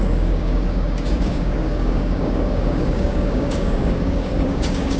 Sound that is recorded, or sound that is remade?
remade